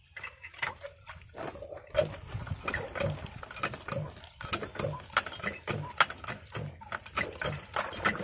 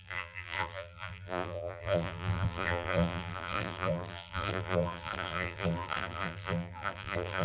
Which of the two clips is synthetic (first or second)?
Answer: second